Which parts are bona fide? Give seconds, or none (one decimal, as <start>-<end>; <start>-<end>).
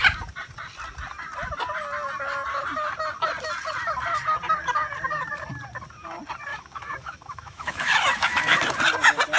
0.0-6.5; 8.6-9.4